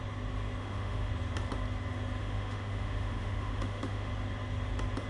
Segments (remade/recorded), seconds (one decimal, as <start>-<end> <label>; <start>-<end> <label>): 0.0-0.6 recorded; 0.6-1.1 remade; 1.1-2.2 recorded; 2.2-4.1 remade; 4.1-5.1 recorded